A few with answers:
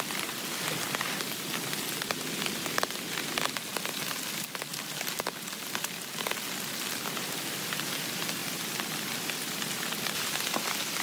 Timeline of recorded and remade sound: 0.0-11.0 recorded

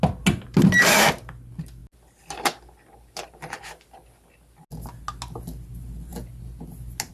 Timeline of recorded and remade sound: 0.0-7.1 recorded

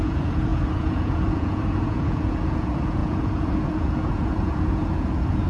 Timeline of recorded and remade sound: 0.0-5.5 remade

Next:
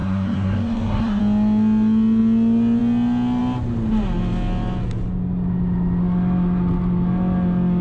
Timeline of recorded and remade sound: 0.0-1.2 remade; 1.2-7.8 recorded

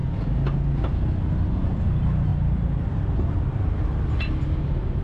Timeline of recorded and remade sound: 0.0-2.3 recorded; 2.3-3.3 remade; 3.3-5.0 recorded